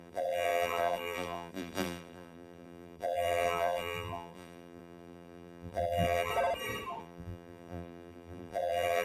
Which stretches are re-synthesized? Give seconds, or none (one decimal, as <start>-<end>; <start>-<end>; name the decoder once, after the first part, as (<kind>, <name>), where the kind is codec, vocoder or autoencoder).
0.0-6.3 (vocoder, BigVGAN v2); 7.0-9.0